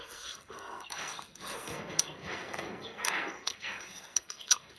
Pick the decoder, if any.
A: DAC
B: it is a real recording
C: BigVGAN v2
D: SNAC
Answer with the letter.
D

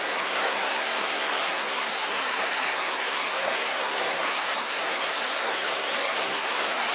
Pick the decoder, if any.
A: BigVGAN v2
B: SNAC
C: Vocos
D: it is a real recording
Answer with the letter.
B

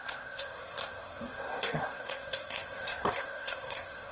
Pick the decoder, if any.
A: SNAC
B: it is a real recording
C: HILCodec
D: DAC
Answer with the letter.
A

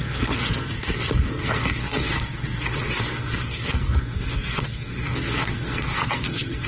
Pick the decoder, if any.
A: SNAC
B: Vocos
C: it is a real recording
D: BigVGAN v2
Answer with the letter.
A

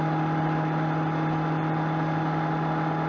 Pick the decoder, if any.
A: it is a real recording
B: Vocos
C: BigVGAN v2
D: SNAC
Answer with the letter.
A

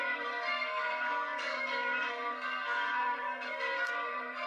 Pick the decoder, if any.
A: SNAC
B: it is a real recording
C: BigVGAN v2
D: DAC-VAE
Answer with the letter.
A